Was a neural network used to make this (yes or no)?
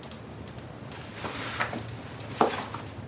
no